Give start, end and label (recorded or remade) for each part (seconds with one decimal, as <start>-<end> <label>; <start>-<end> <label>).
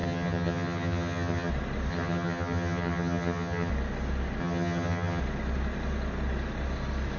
0.0-1.5 remade; 1.5-1.9 recorded; 1.9-3.7 remade; 3.7-4.4 recorded; 4.4-5.2 remade; 5.2-7.2 recorded